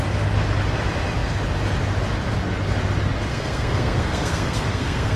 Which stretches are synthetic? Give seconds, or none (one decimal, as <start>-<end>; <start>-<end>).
3.3-5.2